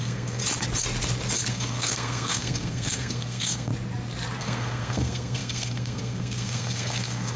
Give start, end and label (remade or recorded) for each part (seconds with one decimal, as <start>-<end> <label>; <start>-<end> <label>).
0.0-0.4 remade; 0.4-1.5 recorded; 1.5-3.7 remade; 3.7-4.4 recorded; 4.4-7.4 remade